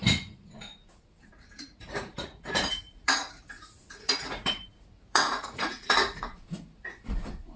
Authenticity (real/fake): fake